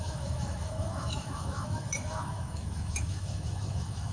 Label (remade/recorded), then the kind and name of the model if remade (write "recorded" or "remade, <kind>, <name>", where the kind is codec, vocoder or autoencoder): remade, autoencoder, DAC-VAE